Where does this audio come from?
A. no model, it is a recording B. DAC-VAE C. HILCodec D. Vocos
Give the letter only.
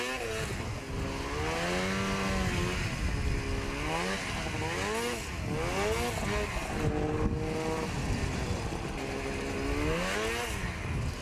A